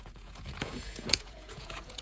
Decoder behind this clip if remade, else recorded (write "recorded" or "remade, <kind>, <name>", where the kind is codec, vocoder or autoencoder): remade, vocoder, Vocos